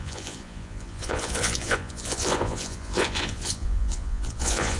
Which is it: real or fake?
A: fake